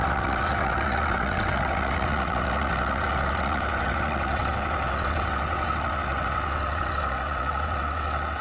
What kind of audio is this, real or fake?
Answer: fake